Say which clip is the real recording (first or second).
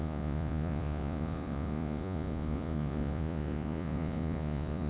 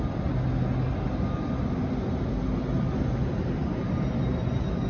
second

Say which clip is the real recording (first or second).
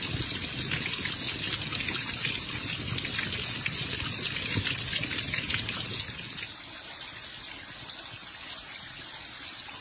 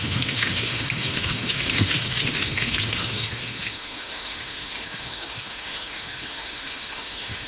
first